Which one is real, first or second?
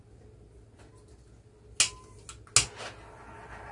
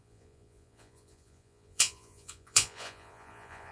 first